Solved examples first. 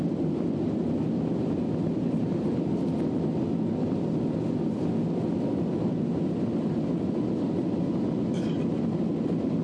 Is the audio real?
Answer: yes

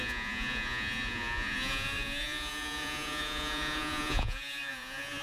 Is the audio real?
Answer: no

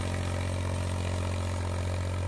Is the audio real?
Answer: yes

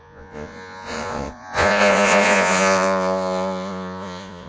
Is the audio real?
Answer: no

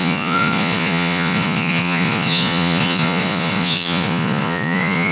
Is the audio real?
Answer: no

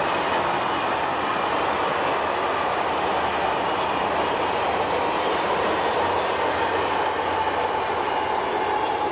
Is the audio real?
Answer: yes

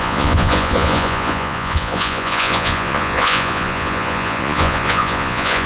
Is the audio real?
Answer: no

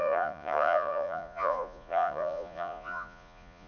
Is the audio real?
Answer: no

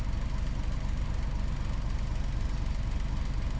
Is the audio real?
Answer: yes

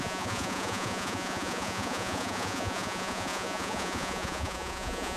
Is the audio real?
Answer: no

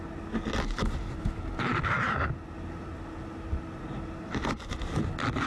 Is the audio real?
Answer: yes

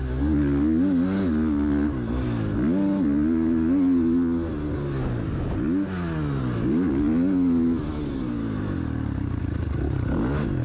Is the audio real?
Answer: yes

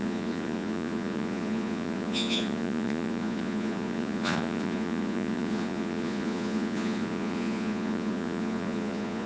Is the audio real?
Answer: no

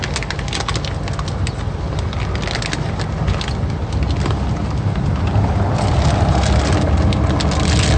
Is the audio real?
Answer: yes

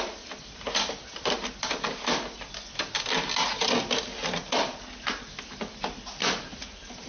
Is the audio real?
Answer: yes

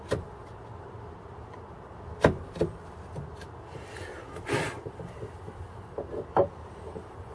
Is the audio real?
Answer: yes